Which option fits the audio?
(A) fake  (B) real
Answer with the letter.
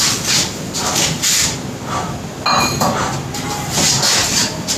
B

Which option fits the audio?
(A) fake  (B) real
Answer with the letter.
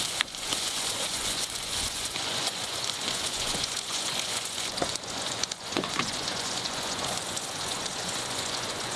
A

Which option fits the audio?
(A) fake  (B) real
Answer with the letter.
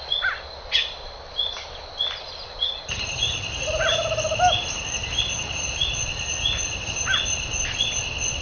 B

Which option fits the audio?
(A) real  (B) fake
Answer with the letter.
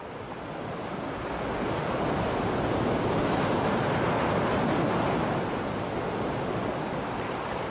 A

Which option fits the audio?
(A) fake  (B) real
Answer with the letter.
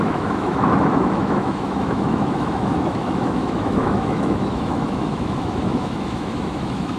A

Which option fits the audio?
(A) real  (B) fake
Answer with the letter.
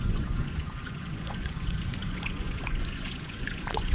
B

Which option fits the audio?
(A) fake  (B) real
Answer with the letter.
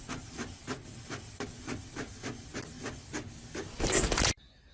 B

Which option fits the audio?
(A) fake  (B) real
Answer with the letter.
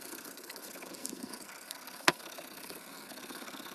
A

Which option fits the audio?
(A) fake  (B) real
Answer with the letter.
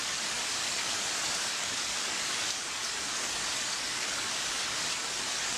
A